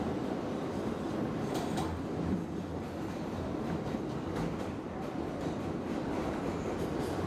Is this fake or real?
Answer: fake